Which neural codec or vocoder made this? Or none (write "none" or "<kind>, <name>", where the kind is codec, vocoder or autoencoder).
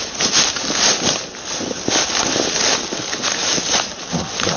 none